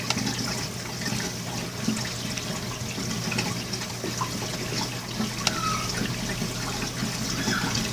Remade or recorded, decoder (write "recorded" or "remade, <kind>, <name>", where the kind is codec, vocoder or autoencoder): recorded